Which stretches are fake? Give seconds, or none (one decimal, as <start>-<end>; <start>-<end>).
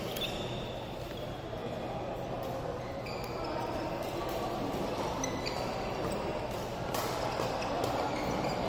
none